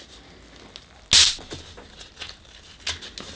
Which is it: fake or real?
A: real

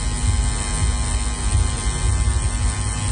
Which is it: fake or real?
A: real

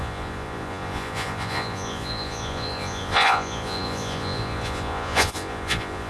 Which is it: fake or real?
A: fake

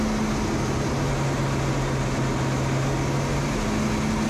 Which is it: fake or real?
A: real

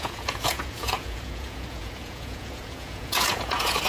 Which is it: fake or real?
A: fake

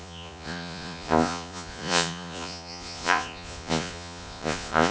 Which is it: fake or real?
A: fake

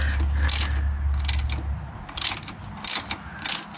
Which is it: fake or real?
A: real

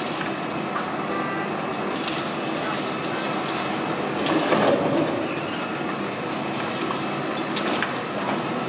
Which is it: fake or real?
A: real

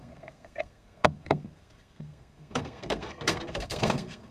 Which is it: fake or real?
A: fake